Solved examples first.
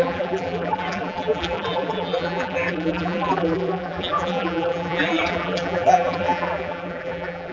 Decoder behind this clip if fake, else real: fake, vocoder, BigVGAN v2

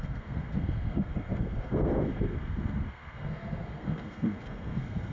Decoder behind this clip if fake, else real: fake, codec, SNAC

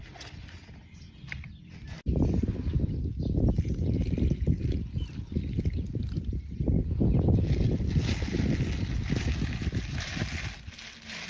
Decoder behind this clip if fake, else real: real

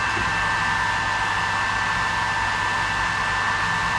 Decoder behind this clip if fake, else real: real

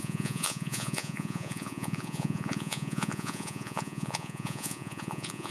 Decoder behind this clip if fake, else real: fake, vocoder, Vocos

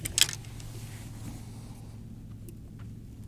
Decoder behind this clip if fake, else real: real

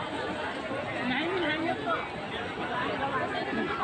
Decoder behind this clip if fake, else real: real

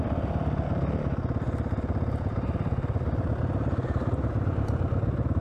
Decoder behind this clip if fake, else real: real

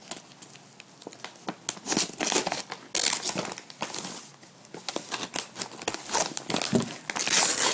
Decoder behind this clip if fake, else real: real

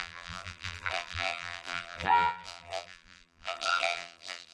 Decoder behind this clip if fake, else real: fake, vocoder, BigVGAN v2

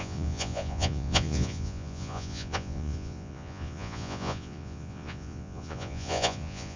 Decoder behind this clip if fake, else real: fake, vocoder, Vocos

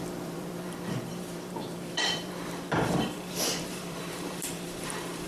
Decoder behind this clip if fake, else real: fake, vocoder, BigVGAN v2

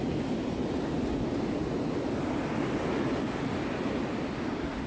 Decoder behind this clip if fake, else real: real